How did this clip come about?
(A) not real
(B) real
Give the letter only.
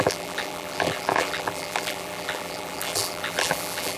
A